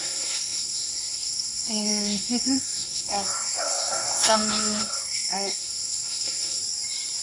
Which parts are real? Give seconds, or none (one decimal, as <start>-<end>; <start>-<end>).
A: 6.6-7.2

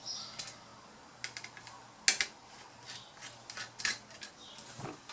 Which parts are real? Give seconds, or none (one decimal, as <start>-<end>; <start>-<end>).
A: 0.0-5.1